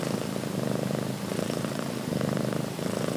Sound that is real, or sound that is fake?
real